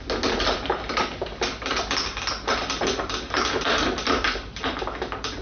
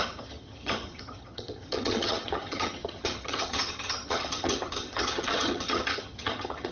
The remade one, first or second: second